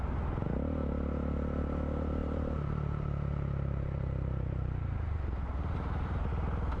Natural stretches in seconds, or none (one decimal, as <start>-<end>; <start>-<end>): 0.0-2.2; 6.3-6.8